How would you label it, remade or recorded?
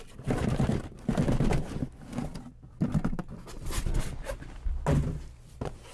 recorded